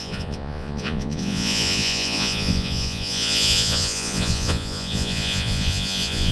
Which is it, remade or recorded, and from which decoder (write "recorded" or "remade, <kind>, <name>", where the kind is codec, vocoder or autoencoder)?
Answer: remade, vocoder, Vocos